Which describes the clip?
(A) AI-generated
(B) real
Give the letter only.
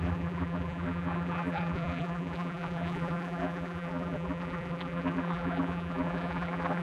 A